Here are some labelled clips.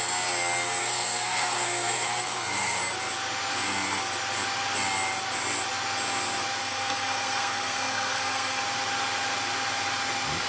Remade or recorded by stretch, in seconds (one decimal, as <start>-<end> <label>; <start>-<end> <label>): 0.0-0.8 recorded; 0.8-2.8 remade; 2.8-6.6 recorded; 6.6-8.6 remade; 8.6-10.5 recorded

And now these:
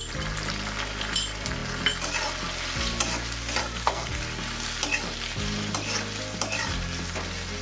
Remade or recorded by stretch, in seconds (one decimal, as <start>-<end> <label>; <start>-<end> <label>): 0.0-3.6 recorded; 3.6-4.2 remade; 4.2-7.6 recorded

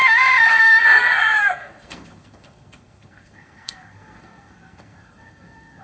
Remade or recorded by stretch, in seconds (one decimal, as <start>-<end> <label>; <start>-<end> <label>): 0.0-0.5 recorded; 0.5-5.8 remade

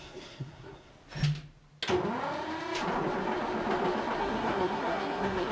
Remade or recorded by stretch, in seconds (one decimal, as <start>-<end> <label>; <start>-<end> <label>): 0.0-0.9 remade; 0.9-4.2 recorded; 4.2-5.5 remade

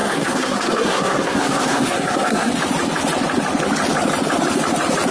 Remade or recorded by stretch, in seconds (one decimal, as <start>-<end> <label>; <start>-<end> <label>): 0.0-2.5 remade; 2.5-5.1 recorded

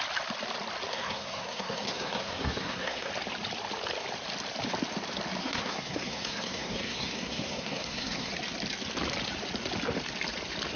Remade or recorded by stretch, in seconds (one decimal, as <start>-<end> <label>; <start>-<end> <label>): 0.0-0.9 recorded; 0.9-3.1 remade; 3.1-5.4 recorded; 5.4-8.3 remade; 8.3-10.8 recorded

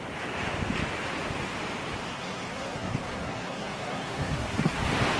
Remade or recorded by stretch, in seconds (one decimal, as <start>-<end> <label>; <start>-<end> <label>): 0.0-2.1 recorded; 2.1-4.8 remade; 4.8-5.2 recorded